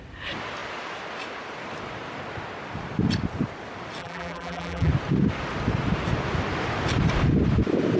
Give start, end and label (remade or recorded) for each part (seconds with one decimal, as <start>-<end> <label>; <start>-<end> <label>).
0.0-4.0 recorded; 4.0-4.9 remade; 4.9-8.0 recorded